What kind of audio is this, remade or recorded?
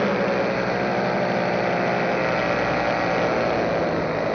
recorded